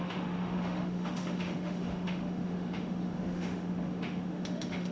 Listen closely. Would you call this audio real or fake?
fake